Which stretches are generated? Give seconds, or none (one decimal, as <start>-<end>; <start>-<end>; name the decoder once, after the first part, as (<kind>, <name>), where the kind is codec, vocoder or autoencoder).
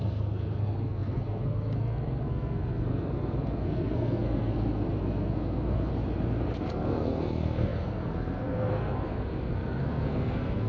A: 0.0-5.9 (codec, SNAC); 6.6-10.7